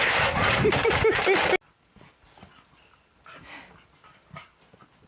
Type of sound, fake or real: real